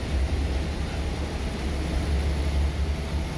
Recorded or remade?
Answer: recorded